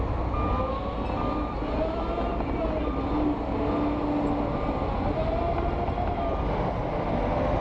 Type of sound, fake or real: real